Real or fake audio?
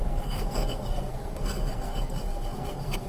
fake